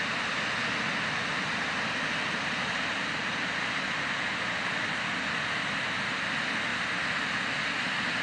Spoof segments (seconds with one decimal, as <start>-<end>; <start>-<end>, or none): none